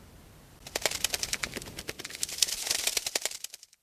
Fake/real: fake